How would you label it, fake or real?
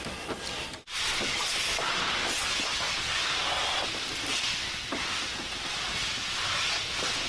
real